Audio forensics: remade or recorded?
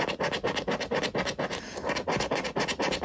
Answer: recorded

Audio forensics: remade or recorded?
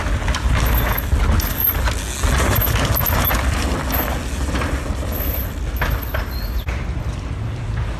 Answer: recorded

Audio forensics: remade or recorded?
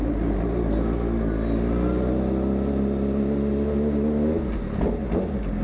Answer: recorded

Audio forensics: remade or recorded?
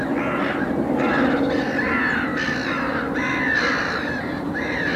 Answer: recorded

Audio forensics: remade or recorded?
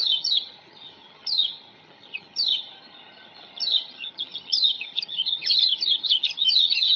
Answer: remade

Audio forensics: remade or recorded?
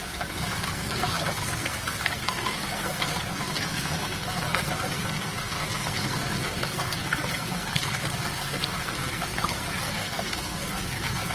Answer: remade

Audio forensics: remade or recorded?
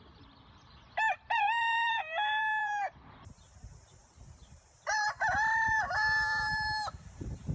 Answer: remade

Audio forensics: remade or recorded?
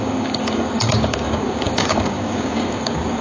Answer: remade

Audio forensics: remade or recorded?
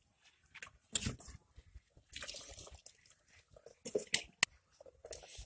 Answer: recorded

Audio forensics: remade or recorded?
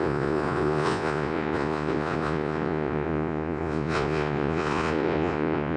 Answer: remade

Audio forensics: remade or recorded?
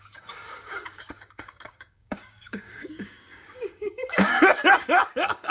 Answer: remade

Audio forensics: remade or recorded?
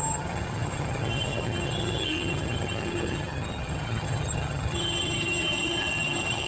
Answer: remade